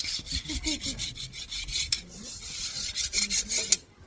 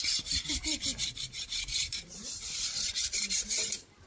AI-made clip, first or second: second